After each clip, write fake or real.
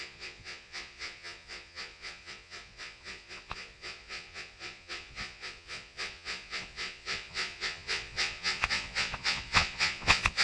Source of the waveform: fake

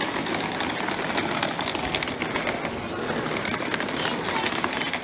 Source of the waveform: real